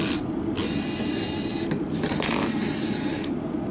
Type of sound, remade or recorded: recorded